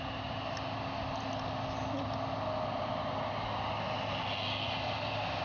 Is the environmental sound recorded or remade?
recorded